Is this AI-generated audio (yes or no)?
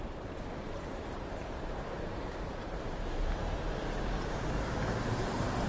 yes